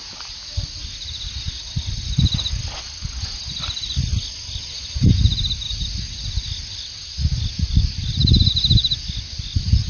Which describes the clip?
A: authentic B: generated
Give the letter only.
A